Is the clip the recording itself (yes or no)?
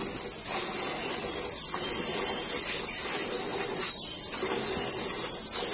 yes